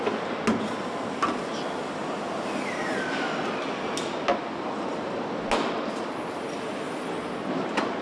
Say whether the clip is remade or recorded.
recorded